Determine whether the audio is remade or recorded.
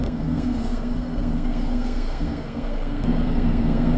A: remade